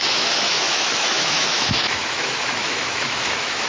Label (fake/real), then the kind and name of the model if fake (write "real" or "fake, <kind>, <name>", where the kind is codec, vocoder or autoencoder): fake, autoencoder, DAC-VAE